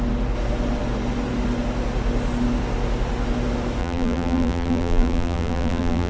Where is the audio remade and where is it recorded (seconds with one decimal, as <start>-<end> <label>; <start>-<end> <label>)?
0.0-3.8 recorded; 3.8-6.1 remade